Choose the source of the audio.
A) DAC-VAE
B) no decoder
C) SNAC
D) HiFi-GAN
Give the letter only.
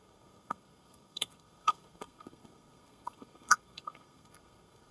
C